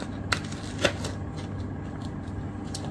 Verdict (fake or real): real